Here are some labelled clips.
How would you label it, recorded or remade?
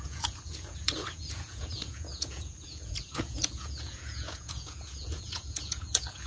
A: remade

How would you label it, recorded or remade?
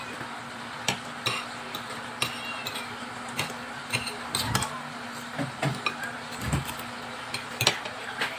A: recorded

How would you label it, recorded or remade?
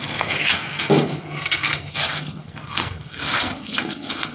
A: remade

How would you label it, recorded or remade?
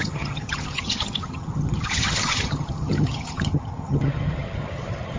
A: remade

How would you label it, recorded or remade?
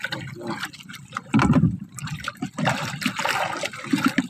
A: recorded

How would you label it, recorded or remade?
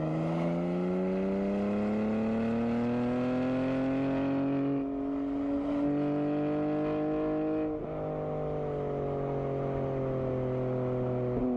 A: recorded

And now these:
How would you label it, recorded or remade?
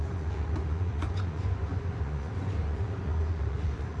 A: remade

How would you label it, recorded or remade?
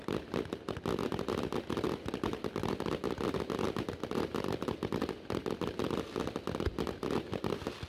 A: recorded